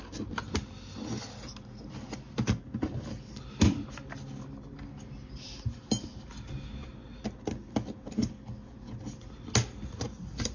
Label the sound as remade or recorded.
recorded